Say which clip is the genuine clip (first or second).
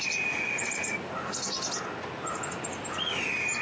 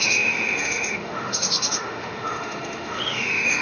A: first